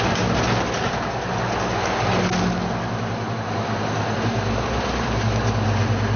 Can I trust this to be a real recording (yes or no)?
yes